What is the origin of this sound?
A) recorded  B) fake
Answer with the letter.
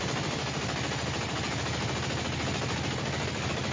A